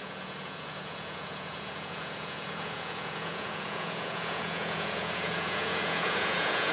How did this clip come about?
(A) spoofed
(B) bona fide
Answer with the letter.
A